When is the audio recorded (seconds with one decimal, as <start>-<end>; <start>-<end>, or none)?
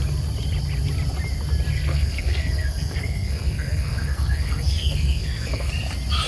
0.0-1.9; 5.7-6.3